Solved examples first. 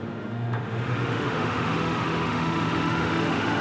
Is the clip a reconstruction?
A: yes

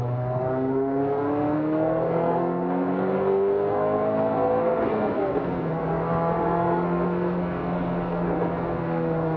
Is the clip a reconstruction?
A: yes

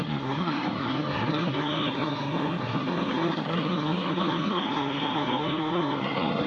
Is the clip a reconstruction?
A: yes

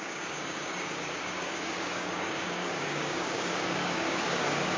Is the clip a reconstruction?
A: yes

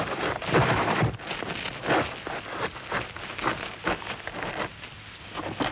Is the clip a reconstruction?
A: no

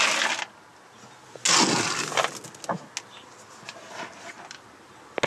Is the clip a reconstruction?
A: no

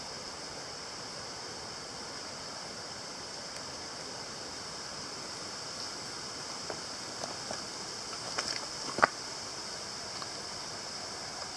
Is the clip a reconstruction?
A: no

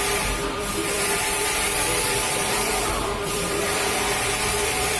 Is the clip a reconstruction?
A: yes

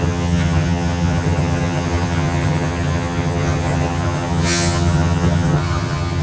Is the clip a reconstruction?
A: yes